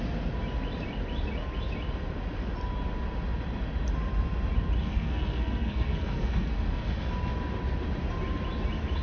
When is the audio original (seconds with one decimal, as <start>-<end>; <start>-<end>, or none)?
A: 0.0-4.8; 7.1-9.0